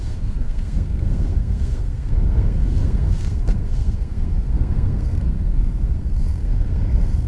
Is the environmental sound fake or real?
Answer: fake